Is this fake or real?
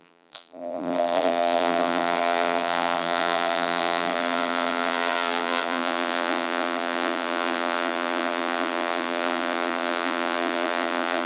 fake